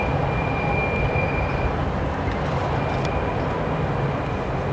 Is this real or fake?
real